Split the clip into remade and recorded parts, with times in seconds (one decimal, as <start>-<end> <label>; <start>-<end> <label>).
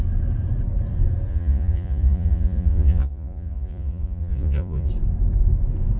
0.0-1.3 recorded; 1.3-4.9 remade; 4.9-6.0 recorded